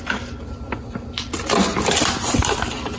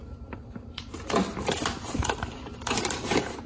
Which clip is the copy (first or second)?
second